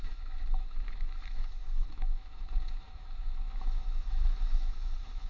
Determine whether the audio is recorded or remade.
remade